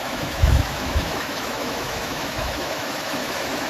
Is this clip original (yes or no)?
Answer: no